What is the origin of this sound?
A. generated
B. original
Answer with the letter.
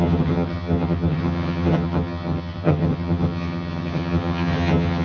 A